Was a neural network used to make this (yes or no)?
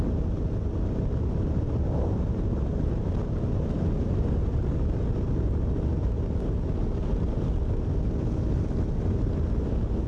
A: no